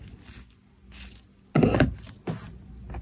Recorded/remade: recorded